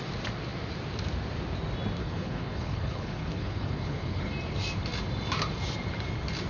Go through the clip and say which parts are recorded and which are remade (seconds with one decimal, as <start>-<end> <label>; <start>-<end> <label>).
0.0-2.0 recorded; 2.0-4.3 remade; 4.3-6.5 recorded